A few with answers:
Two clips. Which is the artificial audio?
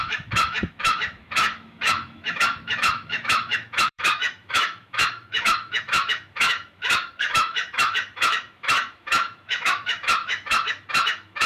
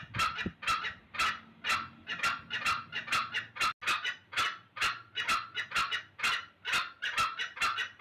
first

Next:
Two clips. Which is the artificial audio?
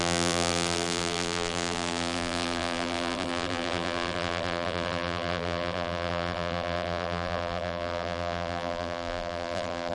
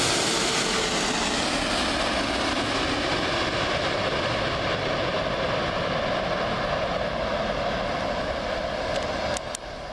first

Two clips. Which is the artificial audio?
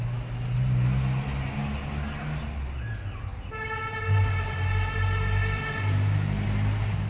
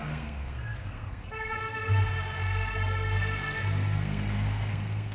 second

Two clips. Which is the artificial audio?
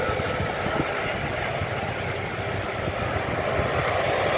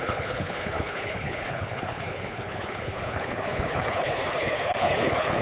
second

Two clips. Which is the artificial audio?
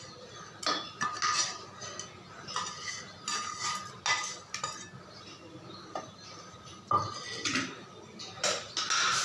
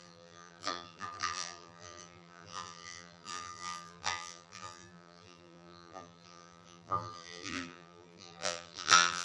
second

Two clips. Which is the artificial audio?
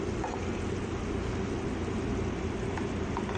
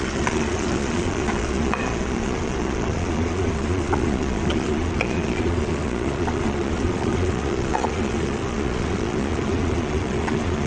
second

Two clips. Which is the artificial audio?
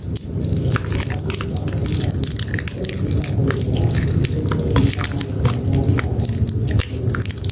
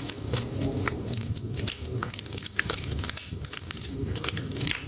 second